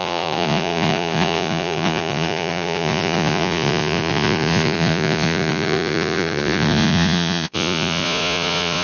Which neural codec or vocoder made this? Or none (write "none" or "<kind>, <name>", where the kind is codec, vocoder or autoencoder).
vocoder, Vocos